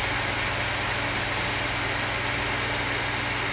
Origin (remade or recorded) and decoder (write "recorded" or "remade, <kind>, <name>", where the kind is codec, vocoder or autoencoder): recorded